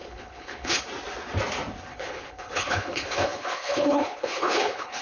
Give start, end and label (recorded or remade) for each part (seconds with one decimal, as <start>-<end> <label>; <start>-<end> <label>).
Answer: 0.0-0.8 remade; 0.8-1.9 recorded; 1.9-5.0 remade